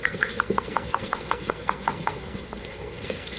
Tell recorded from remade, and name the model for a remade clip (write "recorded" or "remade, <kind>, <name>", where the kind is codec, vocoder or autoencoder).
remade, codec, SNAC